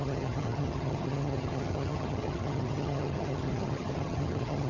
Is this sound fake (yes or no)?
yes